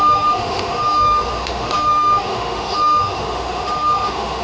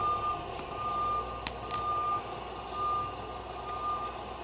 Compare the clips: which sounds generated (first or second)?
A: first